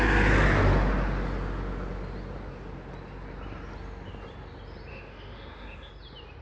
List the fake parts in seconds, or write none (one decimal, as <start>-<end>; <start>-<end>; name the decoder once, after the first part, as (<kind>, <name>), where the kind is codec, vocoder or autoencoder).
4.9-5.9 (autoencoder, DAC-VAE)